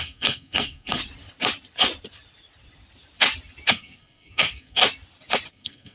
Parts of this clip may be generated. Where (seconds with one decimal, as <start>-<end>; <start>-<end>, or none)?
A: 0.0-1.0; 3.7-4.8; 5.5-5.9